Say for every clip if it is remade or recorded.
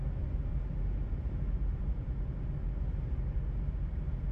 recorded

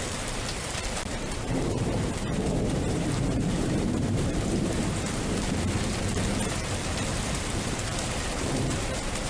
remade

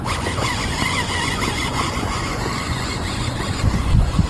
remade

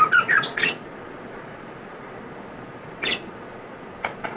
remade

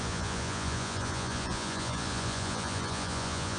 remade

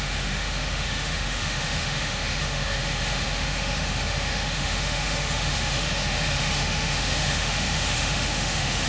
remade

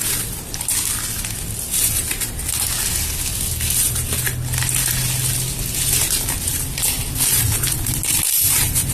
recorded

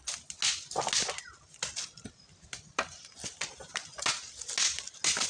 recorded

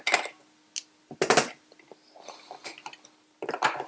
recorded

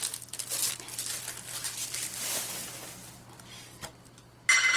recorded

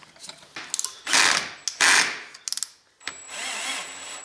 recorded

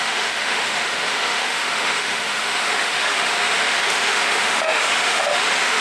remade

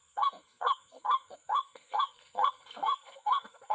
remade